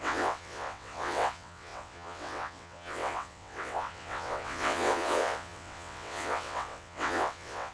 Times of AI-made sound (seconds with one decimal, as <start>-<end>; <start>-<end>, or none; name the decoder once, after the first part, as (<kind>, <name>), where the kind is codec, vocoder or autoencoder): 0.0-7.7 (vocoder, WaveNeXt)